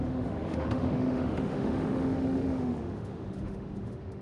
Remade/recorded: remade